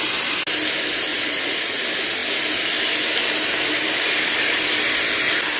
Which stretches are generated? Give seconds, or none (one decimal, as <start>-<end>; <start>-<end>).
1.1-1.8